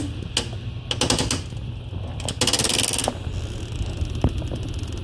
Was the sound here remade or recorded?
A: recorded